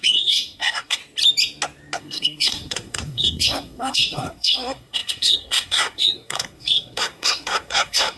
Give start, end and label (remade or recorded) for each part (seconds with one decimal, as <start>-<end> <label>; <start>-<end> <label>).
0.0-1.0 remade; 1.0-2.0 recorded; 2.0-8.2 remade